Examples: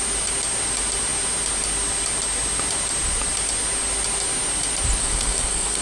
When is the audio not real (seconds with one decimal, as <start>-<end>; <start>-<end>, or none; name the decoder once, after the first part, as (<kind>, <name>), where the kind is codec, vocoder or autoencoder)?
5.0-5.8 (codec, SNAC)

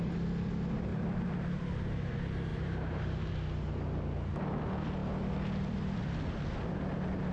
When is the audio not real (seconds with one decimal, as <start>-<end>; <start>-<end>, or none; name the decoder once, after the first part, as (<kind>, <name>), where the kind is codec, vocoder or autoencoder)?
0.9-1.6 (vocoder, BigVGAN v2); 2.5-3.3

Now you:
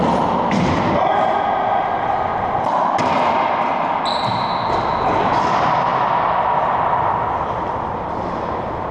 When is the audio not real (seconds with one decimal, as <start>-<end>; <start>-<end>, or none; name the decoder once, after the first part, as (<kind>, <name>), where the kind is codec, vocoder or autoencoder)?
none

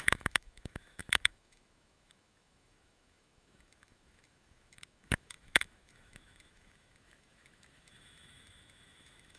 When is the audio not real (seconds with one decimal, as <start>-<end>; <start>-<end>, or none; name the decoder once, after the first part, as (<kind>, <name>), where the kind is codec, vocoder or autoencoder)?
0.0-9.4 (autoencoder, DAC-VAE)

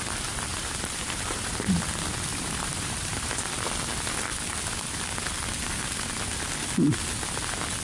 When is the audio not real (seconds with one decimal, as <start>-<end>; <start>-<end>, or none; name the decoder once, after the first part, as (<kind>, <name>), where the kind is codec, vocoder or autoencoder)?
0.5-1.6 (vocoder, BigVGAN v2); 2.3-3.3

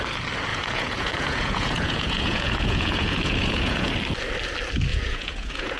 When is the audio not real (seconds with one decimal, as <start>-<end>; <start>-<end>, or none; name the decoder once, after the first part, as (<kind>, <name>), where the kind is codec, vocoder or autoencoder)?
0.5-3.9 (vocoder, Vocos); 4.9-5.8